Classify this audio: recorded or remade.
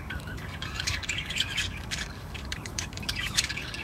remade